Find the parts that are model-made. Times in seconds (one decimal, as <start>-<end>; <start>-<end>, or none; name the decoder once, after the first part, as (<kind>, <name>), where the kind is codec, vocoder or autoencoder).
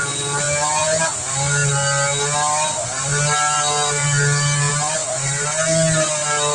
none